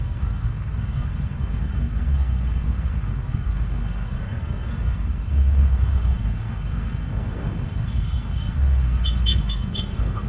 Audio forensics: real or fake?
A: fake